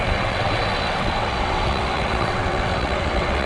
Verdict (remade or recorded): remade